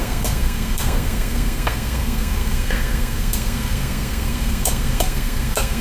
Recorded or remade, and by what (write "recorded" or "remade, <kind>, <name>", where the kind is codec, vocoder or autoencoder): remade, codec, SNAC